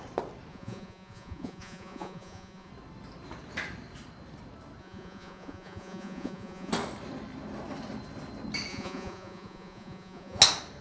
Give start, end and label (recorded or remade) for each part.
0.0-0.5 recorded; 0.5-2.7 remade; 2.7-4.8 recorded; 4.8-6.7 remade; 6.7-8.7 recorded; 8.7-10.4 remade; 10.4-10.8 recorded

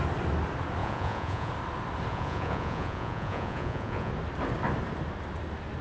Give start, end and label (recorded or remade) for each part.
0.0-0.8 recorded; 0.8-1.5 remade; 1.5-2.1 recorded; 2.1-4.1 remade; 4.1-5.8 recorded

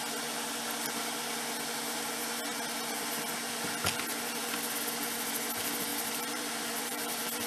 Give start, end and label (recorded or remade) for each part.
0.0-5.9 recorded; 5.9-7.5 remade

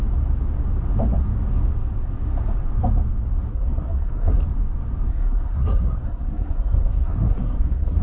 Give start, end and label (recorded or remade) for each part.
0.0-3.5 recorded; 3.5-4.4 remade; 4.4-5.1 recorded; 5.1-8.0 remade